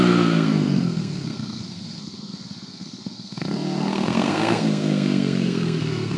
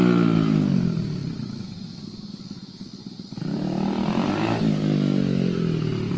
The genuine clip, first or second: second